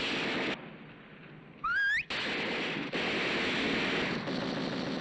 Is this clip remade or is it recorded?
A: recorded